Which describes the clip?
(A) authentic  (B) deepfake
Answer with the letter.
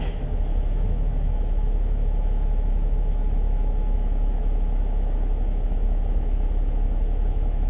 B